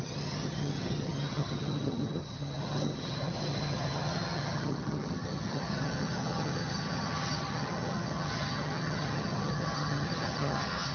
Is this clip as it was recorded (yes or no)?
no